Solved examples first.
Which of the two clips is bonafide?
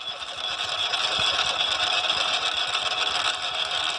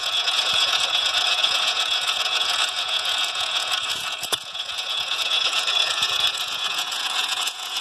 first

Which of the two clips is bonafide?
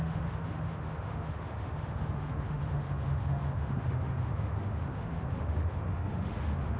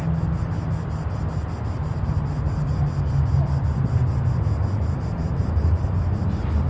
second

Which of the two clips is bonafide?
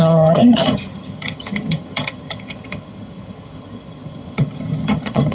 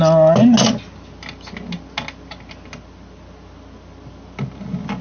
second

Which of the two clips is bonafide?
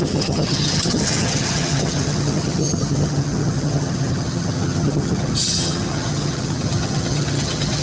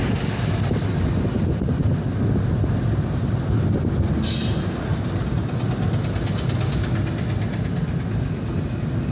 second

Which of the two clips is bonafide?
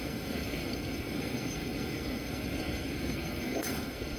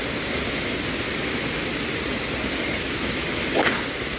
second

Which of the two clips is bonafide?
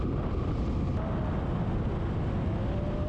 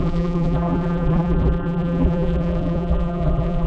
first